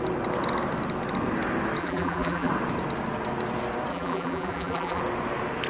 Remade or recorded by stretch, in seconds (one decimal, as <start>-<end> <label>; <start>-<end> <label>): 0.0-1.8 recorded; 1.8-2.5 remade; 2.5-3.9 recorded; 3.9-5.0 remade; 5.0-5.7 recorded